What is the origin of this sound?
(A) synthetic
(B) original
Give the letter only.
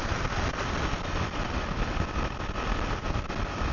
B